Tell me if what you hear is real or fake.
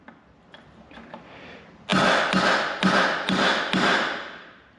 real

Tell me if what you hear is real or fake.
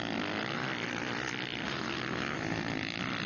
real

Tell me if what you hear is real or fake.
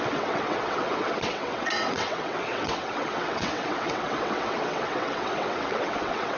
fake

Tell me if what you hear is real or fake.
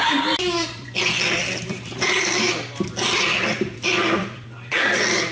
fake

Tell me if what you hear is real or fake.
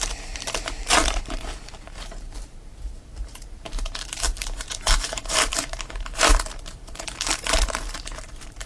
fake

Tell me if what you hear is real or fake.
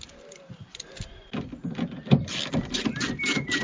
fake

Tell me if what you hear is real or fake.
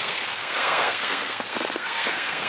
fake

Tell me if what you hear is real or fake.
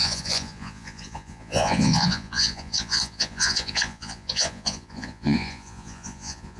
fake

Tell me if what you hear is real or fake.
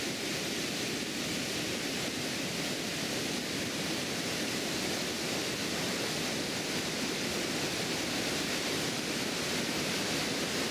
real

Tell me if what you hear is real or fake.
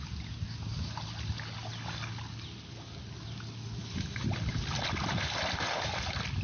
real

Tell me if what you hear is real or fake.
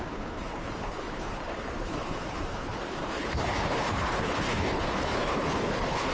fake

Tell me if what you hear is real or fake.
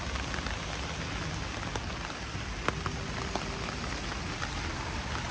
real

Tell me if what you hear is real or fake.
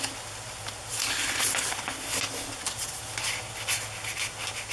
real